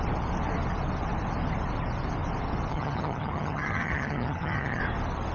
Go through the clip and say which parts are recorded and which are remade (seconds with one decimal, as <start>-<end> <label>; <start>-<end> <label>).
0.0-2.7 recorded; 2.7-4.8 remade; 4.8-5.3 recorded